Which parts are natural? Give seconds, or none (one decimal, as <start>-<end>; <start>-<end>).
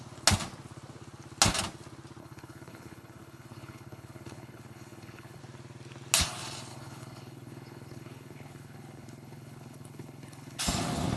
0.0-2.2; 5.4-6.7; 10.6-11.2